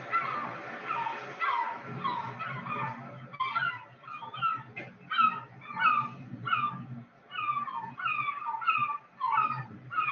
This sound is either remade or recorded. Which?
recorded